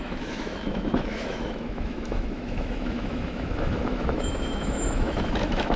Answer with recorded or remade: remade